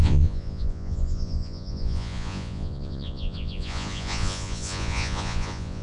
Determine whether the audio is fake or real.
fake